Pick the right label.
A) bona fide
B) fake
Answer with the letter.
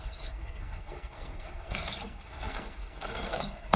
B